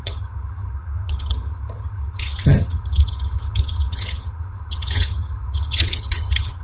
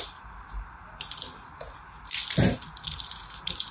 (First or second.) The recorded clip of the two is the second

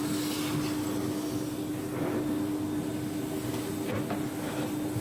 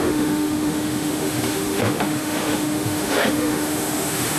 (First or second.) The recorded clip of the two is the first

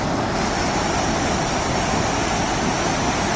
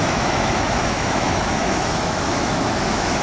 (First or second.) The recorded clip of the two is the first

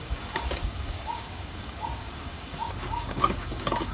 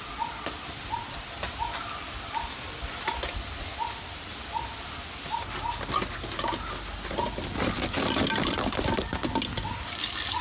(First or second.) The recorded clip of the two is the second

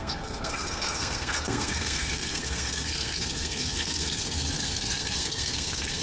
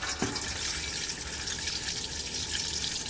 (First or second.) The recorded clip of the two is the second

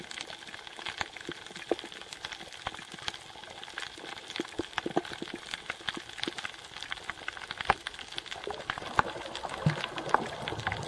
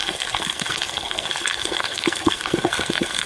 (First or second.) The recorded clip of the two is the first